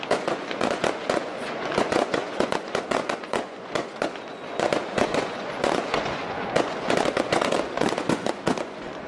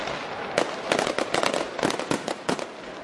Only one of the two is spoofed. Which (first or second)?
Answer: first